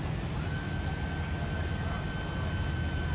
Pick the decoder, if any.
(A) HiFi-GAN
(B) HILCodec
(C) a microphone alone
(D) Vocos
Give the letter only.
C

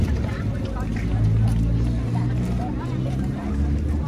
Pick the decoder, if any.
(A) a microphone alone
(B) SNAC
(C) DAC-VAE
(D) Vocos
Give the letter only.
A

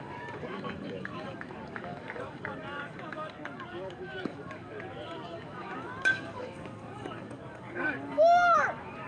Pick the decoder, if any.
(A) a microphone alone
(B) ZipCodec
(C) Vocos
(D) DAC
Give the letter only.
D